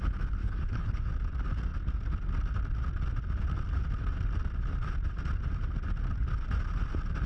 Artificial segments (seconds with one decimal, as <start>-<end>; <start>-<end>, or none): 0.4-1.1